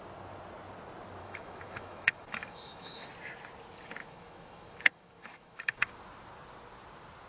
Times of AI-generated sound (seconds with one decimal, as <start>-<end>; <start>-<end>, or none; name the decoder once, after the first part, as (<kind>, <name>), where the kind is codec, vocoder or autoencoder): 1.2-3.1 (autoencoder, DAC-VAE); 4.0-5.9